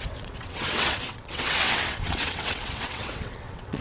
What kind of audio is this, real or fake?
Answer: fake